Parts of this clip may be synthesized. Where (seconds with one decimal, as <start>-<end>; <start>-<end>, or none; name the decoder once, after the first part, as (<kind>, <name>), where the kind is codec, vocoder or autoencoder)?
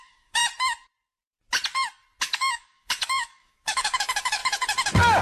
0.0-0.4 (codec, DAC); 2.2-4.4